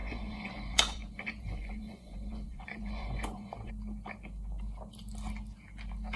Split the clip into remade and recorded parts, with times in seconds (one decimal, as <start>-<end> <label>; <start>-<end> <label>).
0.0-3.7 remade; 3.7-6.2 recorded